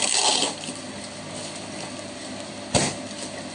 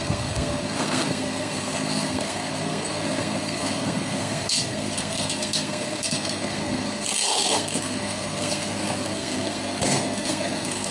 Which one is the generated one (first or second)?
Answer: second